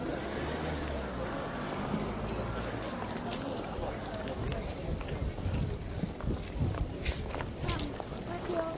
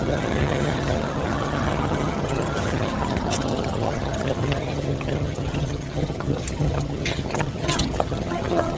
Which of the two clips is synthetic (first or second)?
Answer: second